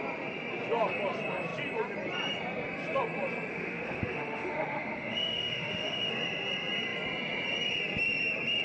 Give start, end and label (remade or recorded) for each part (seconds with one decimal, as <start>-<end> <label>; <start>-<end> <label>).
0.0-3.5 recorded; 3.5-6.1 remade; 6.1-8.6 recorded